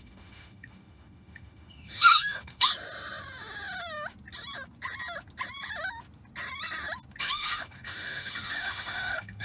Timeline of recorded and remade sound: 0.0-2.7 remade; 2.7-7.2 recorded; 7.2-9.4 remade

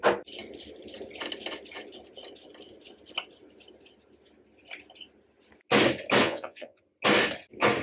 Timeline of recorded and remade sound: 0.0-6.2 recorded; 6.2-6.8 remade; 6.8-7.8 recorded

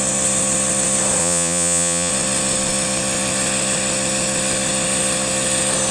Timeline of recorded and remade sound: 0.0-1.2 recorded; 1.2-2.1 remade; 2.1-5.9 recorded

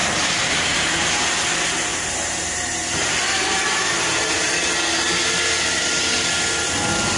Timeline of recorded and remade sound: 0.0-1.1 remade; 1.1-1.9 recorded; 1.9-4.5 remade; 4.5-7.2 recorded

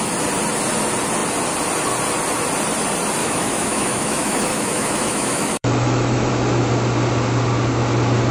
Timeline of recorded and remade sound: 0.0-3.2 recorded; 3.2-6.3 remade; 6.3-8.3 recorded

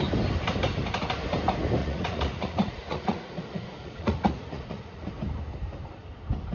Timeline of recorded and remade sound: 0.0-1.8 recorded; 1.8-5.1 remade; 5.1-6.5 recorded

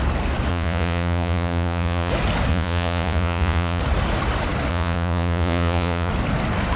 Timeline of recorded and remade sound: 0.0-0.5 recorded; 0.5-2.1 remade; 2.1-2.5 recorded; 2.5-3.8 remade; 3.8-4.7 recorded; 4.7-6.1 remade; 6.1-6.8 recorded

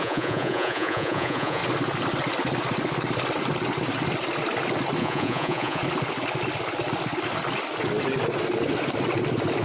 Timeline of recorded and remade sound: 0.0-1.6 remade; 1.6-5.0 recorded; 5.0-5.8 remade; 5.8-9.6 recorded